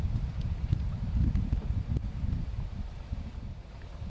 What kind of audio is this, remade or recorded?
recorded